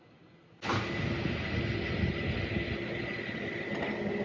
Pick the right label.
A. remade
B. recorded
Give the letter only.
B